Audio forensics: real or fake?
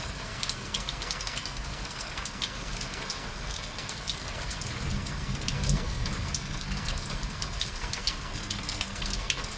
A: fake